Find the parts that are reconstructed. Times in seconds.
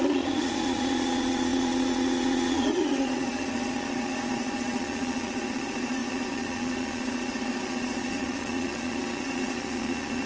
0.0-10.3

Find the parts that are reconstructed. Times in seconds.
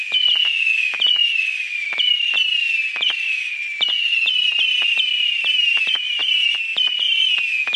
none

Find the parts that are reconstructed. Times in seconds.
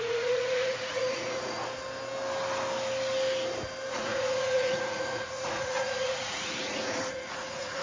0.0-1.6; 3.9-7.8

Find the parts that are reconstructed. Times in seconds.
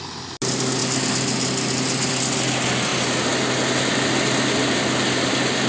none